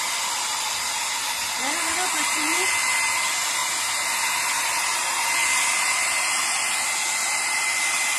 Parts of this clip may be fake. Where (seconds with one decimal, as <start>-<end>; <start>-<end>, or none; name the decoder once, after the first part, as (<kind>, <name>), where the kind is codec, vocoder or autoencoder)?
none